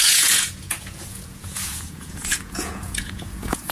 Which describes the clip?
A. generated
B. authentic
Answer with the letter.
A